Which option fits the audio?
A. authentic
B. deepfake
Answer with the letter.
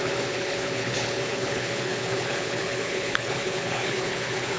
B